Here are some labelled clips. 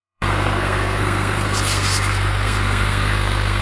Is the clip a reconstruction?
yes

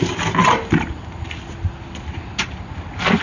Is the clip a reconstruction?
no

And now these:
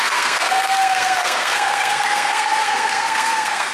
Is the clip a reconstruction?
yes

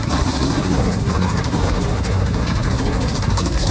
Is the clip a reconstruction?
yes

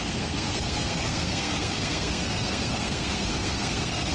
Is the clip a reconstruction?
yes